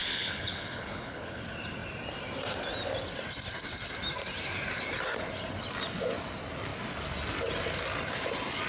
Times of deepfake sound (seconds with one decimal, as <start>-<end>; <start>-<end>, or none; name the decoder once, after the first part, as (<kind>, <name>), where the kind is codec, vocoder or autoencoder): 0.0-1.4 (codec, HILCodec)

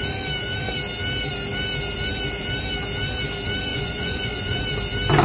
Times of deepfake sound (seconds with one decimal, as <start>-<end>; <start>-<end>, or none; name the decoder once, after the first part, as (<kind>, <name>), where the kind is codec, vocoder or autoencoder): 3.7-4.6 (vocoder, Vocos)

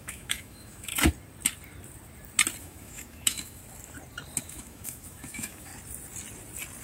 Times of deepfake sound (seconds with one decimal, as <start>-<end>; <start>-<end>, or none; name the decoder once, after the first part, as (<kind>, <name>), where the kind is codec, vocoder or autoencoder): 0.0-0.9 (autoencoder, DAC-VAE); 2.6-3.6; 4.4-5.7

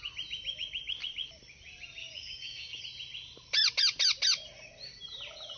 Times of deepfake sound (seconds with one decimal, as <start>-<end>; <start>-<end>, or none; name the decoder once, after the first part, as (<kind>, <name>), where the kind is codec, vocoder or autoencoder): 2.0-2.8 (codec, DAC)

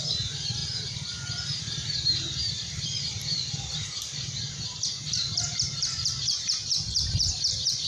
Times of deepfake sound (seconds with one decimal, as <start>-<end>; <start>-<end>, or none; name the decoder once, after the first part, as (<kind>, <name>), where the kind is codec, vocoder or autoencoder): 0.0-0.6 (vocoder, BigVGAN v2); 1.6-7.9

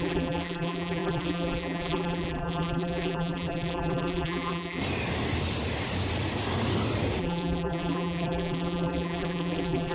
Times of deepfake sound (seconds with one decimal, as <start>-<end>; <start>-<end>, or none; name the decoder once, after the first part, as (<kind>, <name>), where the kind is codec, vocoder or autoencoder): 0.0-4.8 (vocoder, BigVGAN v2); 7.2-9.9